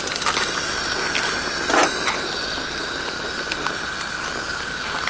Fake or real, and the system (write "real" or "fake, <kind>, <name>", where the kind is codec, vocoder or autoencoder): real